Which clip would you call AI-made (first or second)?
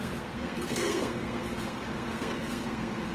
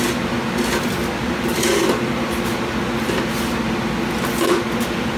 first